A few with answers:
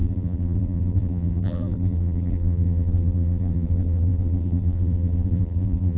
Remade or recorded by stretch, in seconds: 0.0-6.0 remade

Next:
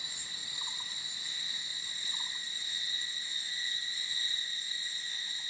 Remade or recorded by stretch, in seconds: 0.0-0.4 recorded; 0.4-1.0 remade; 1.0-1.7 recorded; 1.7-2.5 remade; 2.5-5.5 recorded

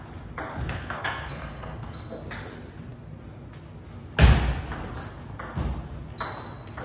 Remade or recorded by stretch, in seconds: 0.0-0.5 recorded; 0.5-2.2 remade; 2.2-6.8 recorded

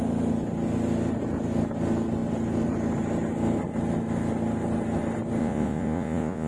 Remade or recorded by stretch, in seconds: 0.0-5.4 recorded; 5.4-6.5 remade

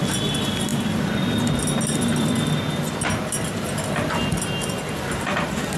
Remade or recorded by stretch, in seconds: 0.0-5.8 recorded